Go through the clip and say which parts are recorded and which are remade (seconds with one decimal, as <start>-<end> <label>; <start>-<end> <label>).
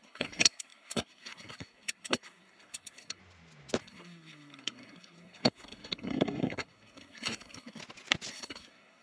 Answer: 0.0-3.2 remade; 3.2-3.8 recorded; 3.8-7.8 remade; 7.8-8.3 recorded; 8.3-9.0 remade